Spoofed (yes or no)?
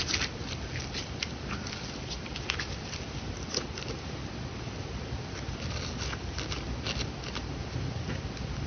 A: no